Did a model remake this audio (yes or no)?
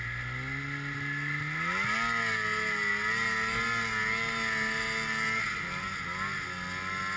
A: no